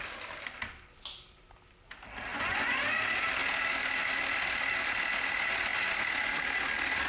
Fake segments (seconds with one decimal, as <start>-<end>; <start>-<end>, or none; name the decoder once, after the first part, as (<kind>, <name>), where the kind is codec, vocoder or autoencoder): 2.3-2.8 (vocoder, Vocos)